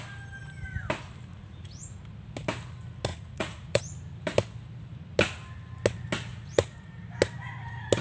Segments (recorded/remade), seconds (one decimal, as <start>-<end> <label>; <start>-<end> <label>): 0.0-1.3 recorded; 1.3-2.0 remade; 2.0-3.1 recorded; 3.1-3.8 remade; 3.8-6.3 recorded; 6.3-6.9 remade; 6.9-8.0 recorded